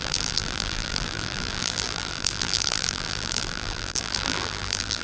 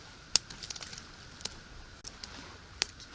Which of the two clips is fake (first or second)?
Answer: first